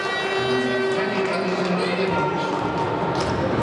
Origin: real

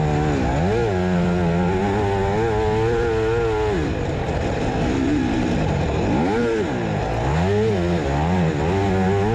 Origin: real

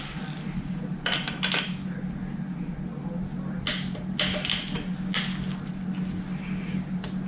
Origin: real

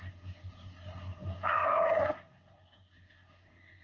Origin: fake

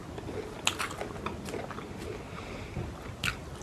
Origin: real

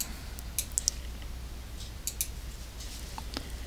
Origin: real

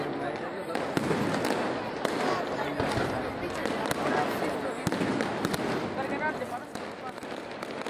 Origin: real